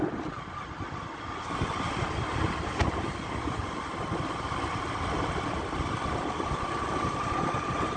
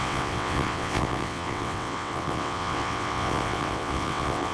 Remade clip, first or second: second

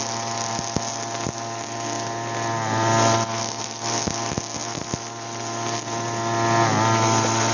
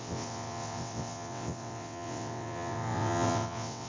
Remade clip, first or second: second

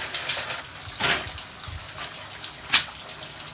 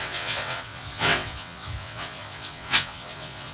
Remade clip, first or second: second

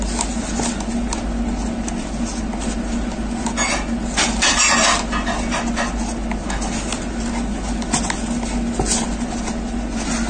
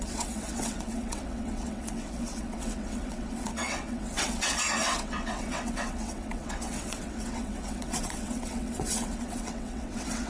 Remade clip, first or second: second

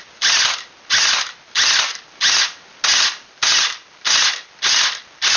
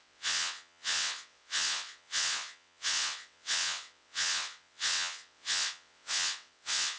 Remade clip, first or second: second